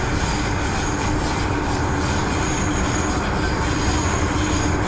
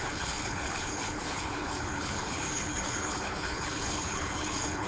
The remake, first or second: second